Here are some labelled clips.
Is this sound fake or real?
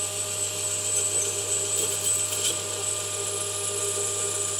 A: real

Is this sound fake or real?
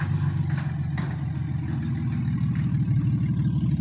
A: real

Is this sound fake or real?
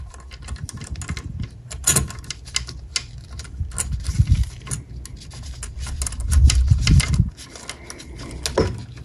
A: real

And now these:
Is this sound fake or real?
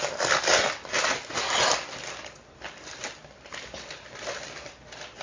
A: real